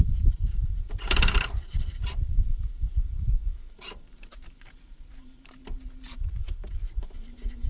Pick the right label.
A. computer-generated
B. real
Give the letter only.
A